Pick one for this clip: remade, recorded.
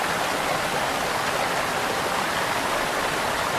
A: recorded